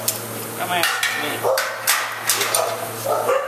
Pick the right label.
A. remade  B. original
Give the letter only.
B